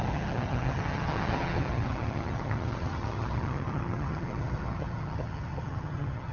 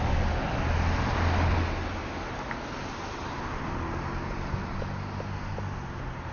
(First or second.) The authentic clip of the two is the second